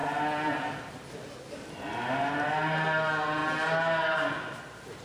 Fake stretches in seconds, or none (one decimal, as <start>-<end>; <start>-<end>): 0.0-0.9